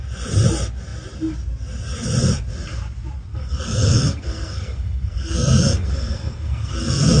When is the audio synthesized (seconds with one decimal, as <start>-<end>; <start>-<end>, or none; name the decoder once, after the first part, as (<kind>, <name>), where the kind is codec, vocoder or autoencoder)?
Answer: 3.3-7.2 (codec, SNAC)